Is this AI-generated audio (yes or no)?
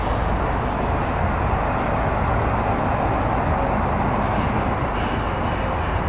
no